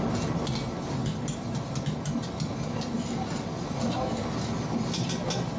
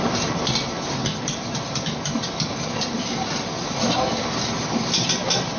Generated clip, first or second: second